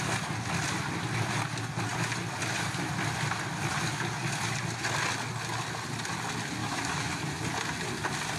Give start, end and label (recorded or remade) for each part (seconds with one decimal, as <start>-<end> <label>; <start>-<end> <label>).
0.0-6.6 recorded; 6.6-7.4 remade; 7.4-8.4 recorded